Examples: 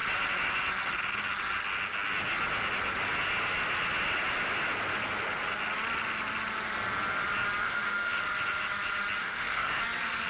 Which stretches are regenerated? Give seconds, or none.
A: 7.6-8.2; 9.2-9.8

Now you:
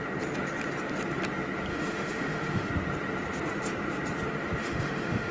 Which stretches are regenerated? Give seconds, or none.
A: 1.7-2.7; 4.6-5.3

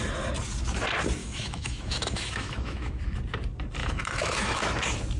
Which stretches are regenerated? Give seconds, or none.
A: 1.2-3.0; 3.8-4.6

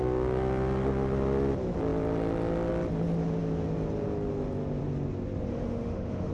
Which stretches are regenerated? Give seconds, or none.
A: 5.5-6.3